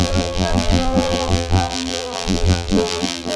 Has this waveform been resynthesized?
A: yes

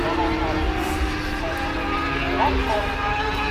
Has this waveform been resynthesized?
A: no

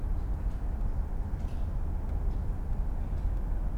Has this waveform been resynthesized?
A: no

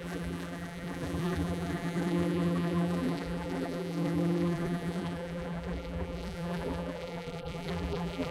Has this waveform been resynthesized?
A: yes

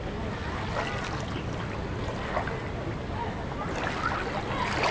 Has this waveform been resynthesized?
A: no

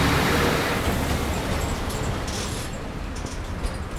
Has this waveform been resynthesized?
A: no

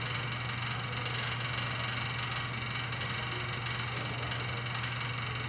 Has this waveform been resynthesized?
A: no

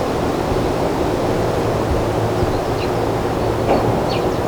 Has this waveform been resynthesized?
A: no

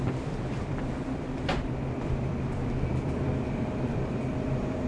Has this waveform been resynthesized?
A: yes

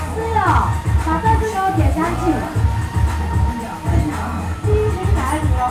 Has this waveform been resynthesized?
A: no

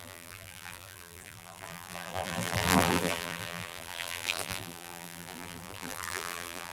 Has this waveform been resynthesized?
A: yes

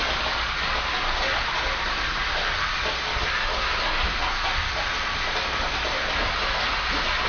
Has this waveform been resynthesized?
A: no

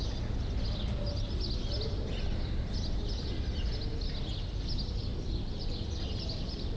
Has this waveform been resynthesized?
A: no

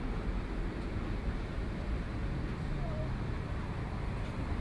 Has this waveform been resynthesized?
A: yes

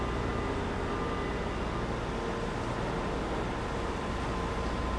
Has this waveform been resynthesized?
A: no